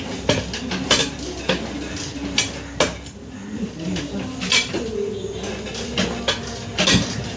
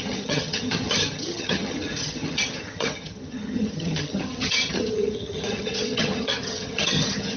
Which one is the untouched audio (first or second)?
first